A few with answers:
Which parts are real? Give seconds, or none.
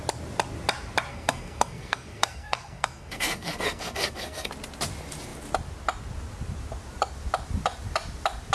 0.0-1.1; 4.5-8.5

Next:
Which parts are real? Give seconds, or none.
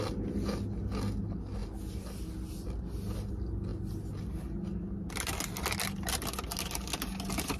0.0-7.6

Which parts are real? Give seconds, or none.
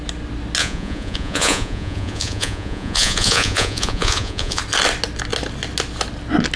0.0-0.6; 4.6-6.6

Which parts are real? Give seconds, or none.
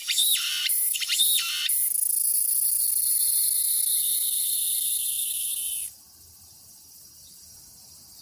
1.6-4.1; 7.4-8.2